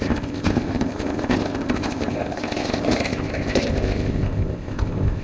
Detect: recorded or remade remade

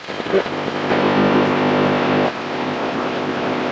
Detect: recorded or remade remade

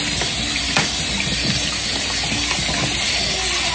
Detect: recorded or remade recorded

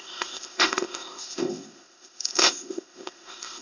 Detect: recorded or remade remade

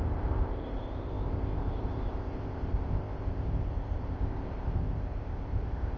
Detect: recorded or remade remade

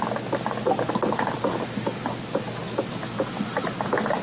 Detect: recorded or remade recorded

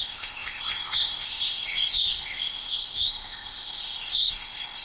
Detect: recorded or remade remade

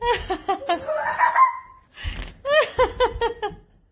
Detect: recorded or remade recorded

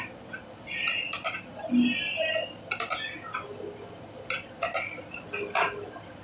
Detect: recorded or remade recorded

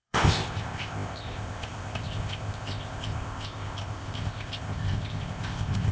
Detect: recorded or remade remade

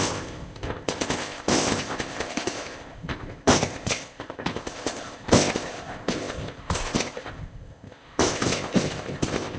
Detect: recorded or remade remade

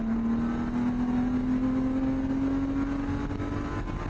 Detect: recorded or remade recorded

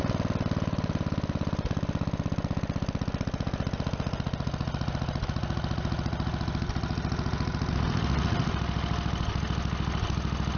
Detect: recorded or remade recorded